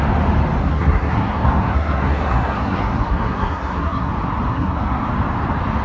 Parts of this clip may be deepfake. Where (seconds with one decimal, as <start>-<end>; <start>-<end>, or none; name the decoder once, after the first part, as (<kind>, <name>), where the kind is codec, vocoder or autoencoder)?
0.6-4.1 (codec, SNAC); 4.5-5.1